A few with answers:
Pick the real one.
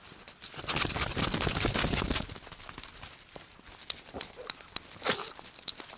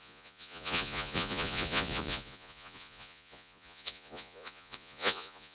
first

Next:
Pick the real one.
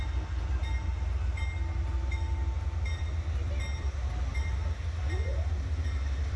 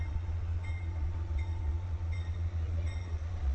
first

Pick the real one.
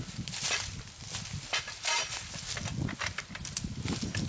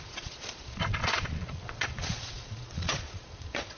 first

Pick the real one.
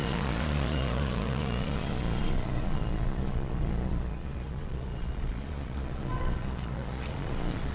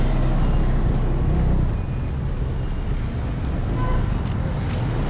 second